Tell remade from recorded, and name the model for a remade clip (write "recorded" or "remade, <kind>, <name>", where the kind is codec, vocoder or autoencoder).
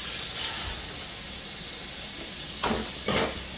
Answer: recorded